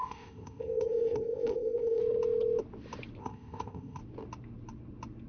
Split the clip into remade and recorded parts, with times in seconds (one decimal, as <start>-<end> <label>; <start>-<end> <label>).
0.0-2.0 remade; 2.0-3.2 recorded; 3.2-4.0 remade; 4.0-5.3 recorded